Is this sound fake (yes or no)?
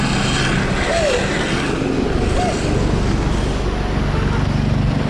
no